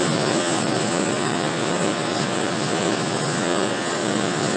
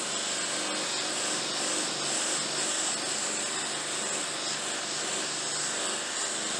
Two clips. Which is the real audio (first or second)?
second